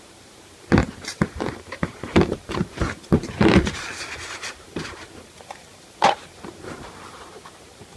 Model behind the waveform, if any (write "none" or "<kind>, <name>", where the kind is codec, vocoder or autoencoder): vocoder, BigVGAN v2